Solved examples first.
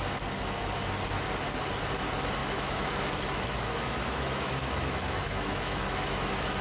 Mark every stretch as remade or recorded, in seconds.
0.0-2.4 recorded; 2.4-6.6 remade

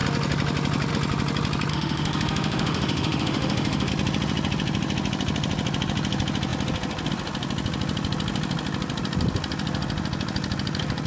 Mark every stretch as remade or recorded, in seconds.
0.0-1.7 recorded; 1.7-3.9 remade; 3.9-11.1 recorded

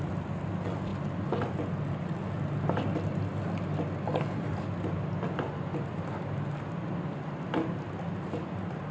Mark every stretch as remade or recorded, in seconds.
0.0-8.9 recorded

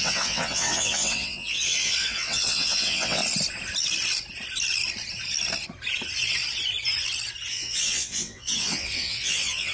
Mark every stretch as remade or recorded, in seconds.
0.0-3.2 remade; 3.2-7.5 recorded; 7.5-9.7 remade

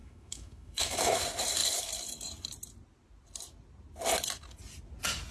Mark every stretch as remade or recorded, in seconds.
0.0-1.2 remade; 1.2-5.3 recorded

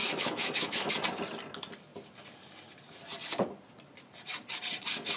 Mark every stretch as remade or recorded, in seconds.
0.0-0.9 remade; 0.9-5.2 recorded